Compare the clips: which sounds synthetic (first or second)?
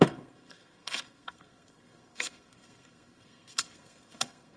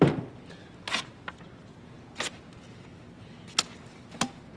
first